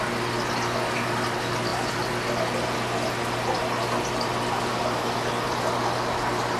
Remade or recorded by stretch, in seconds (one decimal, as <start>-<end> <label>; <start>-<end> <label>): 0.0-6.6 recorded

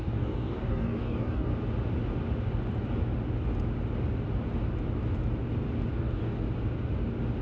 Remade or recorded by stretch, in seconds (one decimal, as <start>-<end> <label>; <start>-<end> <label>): 0.0-1.5 remade; 1.5-5.9 recorded; 5.9-6.4 remade; 6.4-7.4 recorded

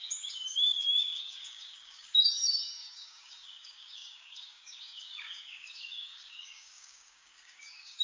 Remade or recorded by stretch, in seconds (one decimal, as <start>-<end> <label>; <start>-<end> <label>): 0.0-8.0 remade

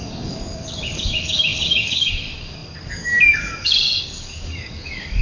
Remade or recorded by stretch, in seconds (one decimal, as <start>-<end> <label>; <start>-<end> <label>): 0.0-5.2 remade